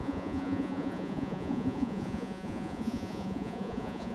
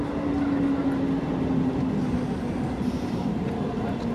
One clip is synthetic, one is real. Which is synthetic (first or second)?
first